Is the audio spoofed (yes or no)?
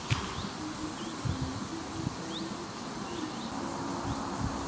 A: no